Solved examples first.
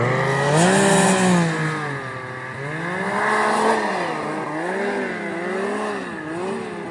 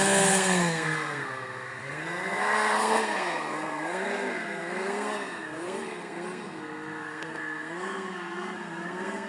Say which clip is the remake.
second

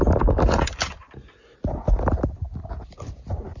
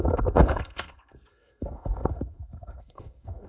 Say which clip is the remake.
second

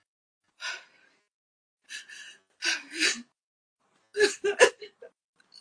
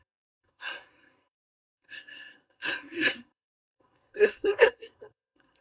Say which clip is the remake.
second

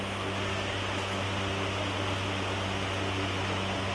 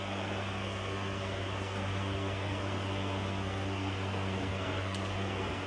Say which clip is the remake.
second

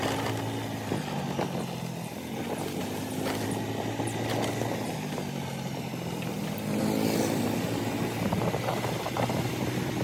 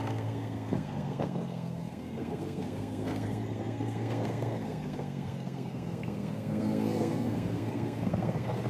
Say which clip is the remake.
second